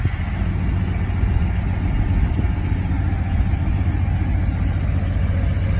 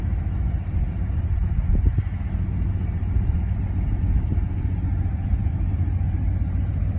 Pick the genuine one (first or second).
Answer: first